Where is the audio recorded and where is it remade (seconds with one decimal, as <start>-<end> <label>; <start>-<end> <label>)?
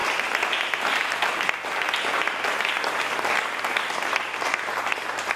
0.0-5.4 recorded